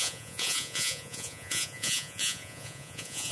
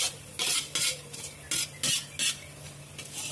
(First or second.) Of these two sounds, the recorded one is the second